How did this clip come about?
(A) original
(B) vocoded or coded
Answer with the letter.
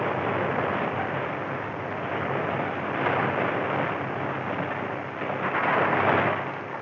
A